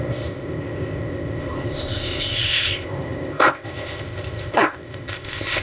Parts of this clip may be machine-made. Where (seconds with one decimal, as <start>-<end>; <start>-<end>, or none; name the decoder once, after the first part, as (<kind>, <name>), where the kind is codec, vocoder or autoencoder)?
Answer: 0.0-5.6 (codec, ZipCodec)